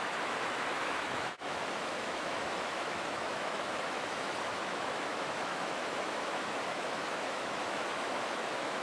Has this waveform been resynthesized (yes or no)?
yes